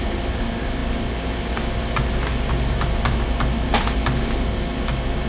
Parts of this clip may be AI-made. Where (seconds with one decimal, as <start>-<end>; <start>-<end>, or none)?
0.8-4.0